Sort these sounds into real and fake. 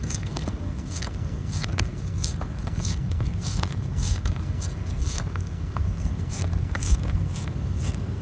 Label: fake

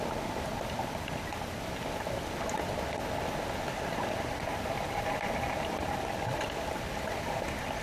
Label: real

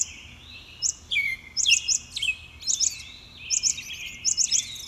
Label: real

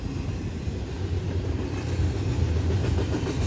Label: real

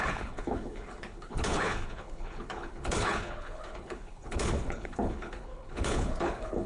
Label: fake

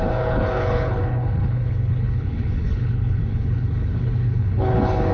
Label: fake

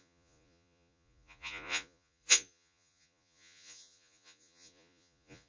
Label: fake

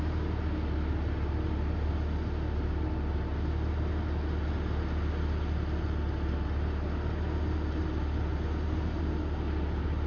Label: real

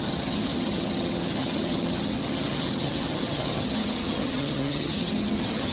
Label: fake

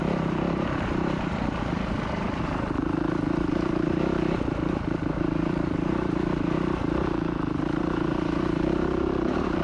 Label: fake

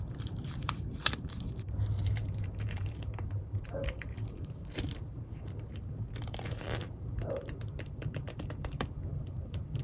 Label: fake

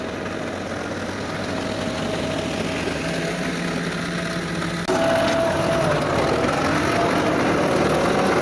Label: real